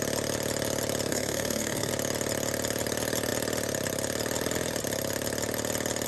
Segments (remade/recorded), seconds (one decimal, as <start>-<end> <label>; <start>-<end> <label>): 0.0-1.1 recorded; 1.1-1.9 remade; 1.9-6.1 recorded